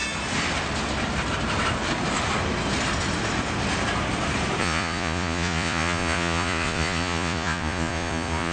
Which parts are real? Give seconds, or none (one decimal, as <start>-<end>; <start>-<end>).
0.0-4.6